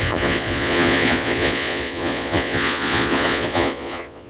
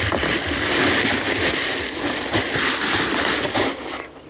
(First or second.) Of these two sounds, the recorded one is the second